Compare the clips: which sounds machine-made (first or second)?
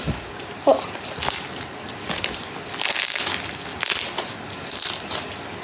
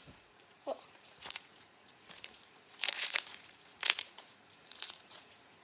second